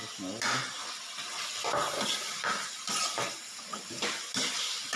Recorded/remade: recorded